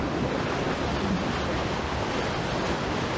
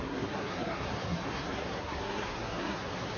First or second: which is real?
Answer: first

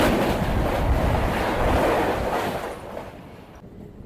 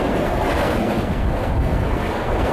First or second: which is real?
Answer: first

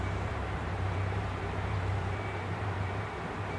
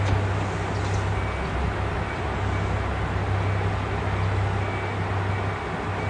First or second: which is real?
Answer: second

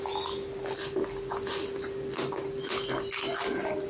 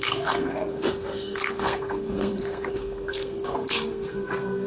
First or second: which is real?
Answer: first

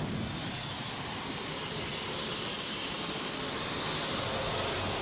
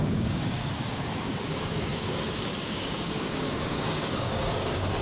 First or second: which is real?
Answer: first